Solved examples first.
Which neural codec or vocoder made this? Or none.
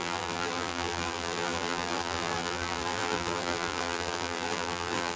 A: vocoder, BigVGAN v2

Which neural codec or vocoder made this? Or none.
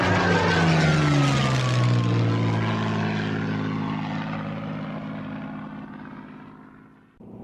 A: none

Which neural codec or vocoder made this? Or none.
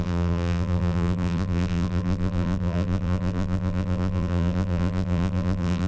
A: vocoder, BigVGAN v2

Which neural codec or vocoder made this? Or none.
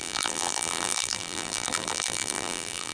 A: vocoder, BigVGAN v2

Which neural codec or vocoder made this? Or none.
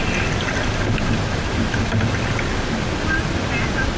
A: none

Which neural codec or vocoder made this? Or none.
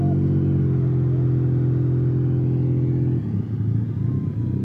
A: none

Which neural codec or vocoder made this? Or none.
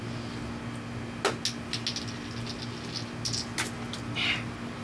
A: none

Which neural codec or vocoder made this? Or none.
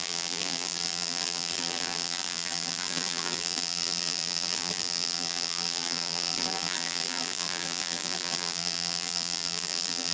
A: vocoder, BigVGAN v2